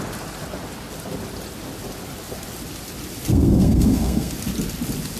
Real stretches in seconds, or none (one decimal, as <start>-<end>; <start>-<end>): 0.0-3.3; 4.3-5.2